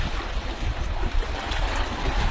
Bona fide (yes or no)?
yes